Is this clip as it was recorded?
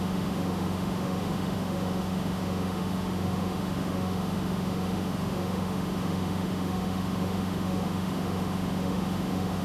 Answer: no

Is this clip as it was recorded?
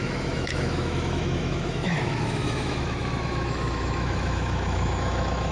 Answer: no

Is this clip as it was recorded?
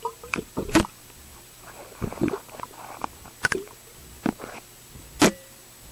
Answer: yes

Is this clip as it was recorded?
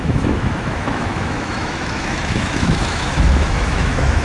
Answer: no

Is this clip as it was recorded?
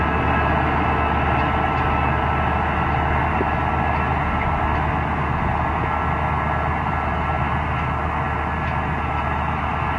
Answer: yes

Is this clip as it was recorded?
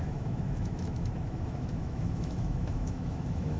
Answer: no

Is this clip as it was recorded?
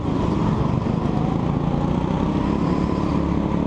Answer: yes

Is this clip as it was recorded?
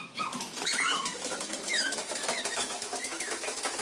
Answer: no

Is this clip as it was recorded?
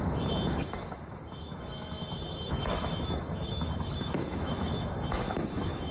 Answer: no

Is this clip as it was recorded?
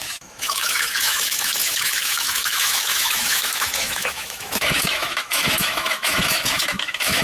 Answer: no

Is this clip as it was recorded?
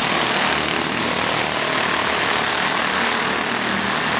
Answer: yes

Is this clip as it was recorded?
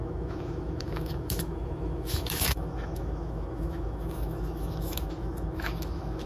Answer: no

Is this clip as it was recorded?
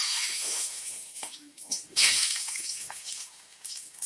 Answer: no